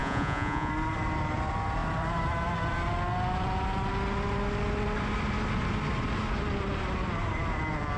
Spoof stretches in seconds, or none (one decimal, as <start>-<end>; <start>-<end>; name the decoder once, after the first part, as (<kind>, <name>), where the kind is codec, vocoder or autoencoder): 0.0-0.7 (vocoder, Vocos)